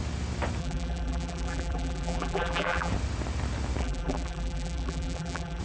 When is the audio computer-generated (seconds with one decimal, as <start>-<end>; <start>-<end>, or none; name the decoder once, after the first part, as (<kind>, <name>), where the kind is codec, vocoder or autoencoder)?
0.6-2.9 (vocoder, BigVGAN v2); 3.8-5.6